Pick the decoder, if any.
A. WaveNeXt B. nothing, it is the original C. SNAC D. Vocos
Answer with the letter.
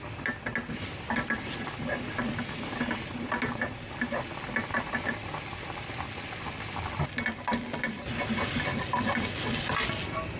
B